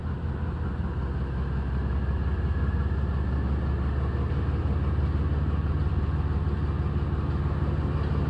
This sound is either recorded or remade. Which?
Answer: recorded